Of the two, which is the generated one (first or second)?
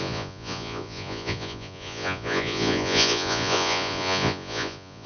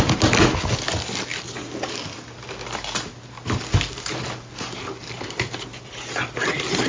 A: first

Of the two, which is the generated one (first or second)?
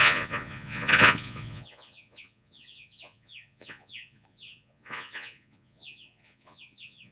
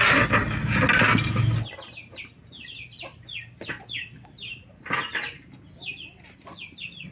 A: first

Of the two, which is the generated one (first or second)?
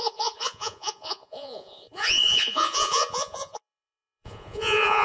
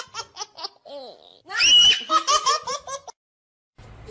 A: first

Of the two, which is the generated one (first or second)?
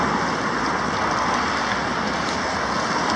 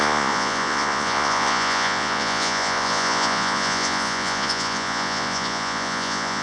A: second